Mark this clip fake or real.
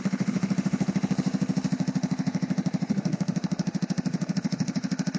fake